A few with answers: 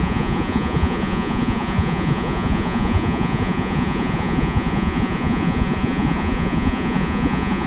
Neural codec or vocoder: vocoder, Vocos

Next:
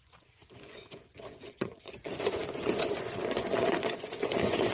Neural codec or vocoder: vocoder, Vocos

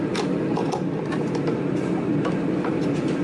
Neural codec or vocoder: none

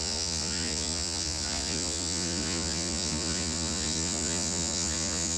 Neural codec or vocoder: vocoder, Vocos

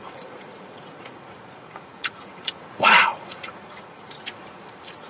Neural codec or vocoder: vocoder, Vocos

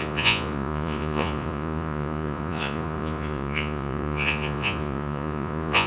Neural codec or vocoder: vocoder, Vocos